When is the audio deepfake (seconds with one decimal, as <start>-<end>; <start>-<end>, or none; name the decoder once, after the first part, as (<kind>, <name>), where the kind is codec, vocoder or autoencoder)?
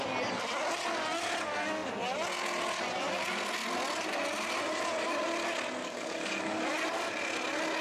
5.8-6.6 (codec, DAC)